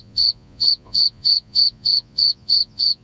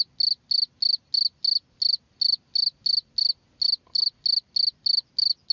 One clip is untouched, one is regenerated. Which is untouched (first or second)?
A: second